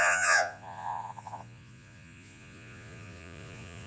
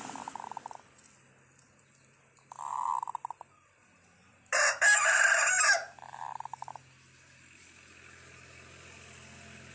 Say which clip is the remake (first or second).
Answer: first